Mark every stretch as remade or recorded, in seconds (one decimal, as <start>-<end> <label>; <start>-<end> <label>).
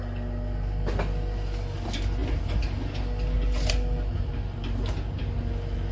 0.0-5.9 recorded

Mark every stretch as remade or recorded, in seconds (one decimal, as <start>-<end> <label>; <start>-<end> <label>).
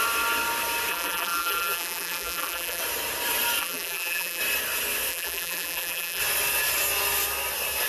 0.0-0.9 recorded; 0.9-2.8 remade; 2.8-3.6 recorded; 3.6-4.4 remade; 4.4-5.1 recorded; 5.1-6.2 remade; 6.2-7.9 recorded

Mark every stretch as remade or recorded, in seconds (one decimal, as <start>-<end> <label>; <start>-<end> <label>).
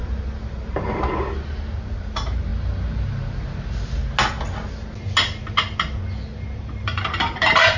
0.0-1.9 recorded; 1.9-2.5 remade; 2.5-6.6 recorded; 6.6-7.8 remade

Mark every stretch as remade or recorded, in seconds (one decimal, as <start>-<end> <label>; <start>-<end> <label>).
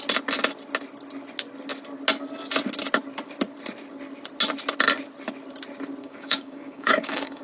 0.0-6.0 recorded; 6.0-7.4 remade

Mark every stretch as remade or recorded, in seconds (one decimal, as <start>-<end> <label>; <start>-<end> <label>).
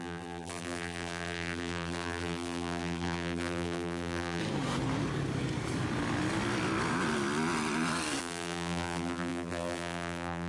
0.0-4.4 remade; 4.4-8.2 recorded; 8.2-10.5 remade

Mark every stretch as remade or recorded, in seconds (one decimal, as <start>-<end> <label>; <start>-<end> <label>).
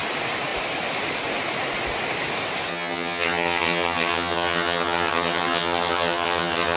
0.0-2.7 recorded; 2.7-6.8 remade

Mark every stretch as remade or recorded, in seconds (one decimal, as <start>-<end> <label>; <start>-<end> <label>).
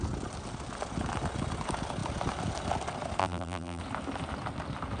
0.0-3.2 recorded; 3.2-3.8 remade; 3.8-5.0 recorded